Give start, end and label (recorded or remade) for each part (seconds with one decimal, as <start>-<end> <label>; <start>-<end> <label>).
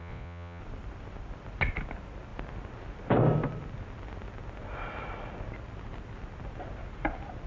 0.0-0.6 remade; 0.6-7.5 recorded